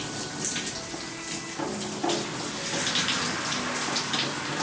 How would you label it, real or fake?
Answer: real